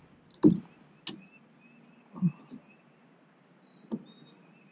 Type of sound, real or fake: real